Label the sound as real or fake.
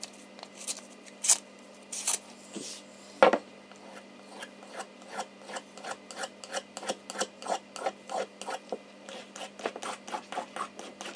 real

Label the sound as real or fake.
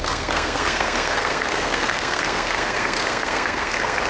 fake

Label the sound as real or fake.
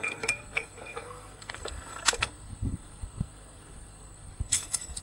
fake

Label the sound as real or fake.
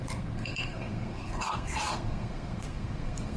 fake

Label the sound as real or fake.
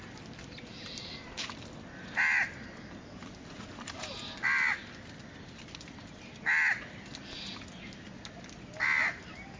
real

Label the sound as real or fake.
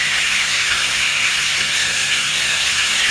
fake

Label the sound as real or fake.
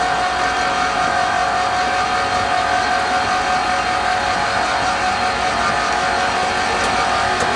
real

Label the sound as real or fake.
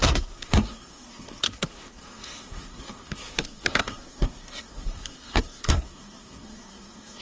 fake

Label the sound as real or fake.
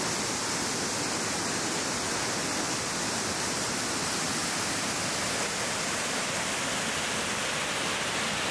real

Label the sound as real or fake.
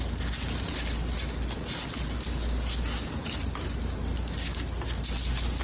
real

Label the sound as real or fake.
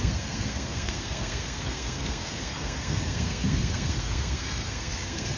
fake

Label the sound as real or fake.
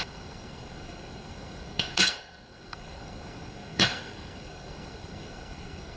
fake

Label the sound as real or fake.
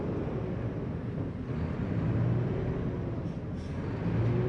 real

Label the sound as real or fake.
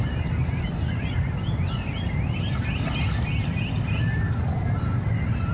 real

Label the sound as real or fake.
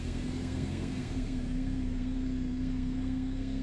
fake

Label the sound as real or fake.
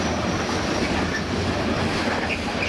real